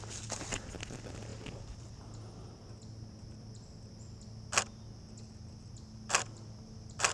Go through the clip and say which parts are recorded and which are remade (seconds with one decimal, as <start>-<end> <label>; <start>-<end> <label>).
0.0-7.1 recorded